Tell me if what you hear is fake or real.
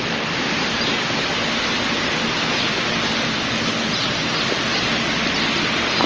real